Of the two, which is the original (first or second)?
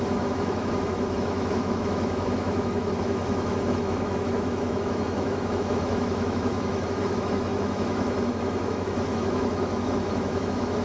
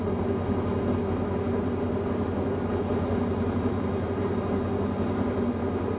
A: second